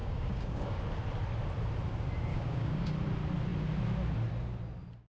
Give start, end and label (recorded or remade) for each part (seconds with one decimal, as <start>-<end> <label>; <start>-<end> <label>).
0.0-0.8 remade; 0.8-2.3 recorded; 2.3-2.9 remade; 2.9-5.1 recorded